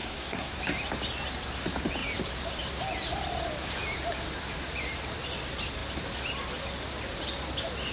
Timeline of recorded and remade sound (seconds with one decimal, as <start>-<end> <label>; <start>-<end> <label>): 0.0-0.6 remade; 0.6-7.9 recorded